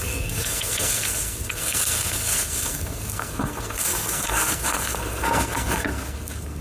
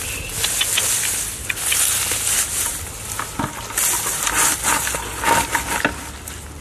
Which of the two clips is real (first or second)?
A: second